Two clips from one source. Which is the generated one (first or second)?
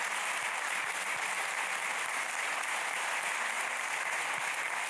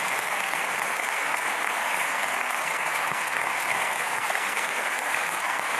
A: second